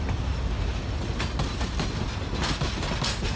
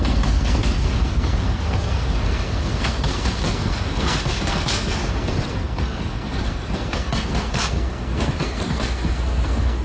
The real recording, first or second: first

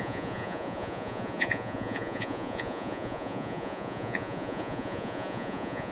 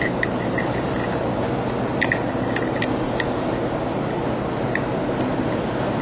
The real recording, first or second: second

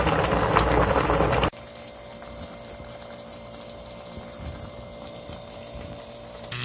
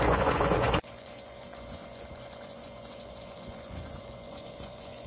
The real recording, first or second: first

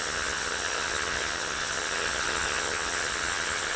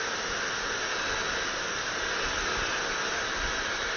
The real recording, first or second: second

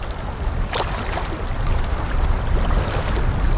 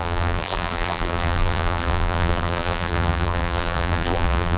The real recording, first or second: first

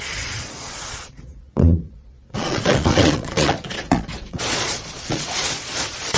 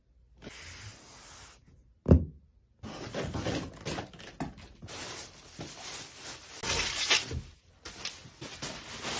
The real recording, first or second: second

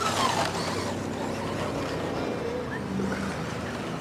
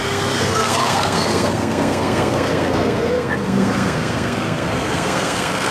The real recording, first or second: first